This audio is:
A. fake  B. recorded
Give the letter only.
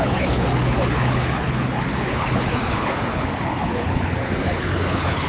A